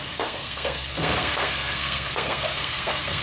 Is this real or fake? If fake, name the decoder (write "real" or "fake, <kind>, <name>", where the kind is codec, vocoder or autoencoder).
fake, codec, SNAC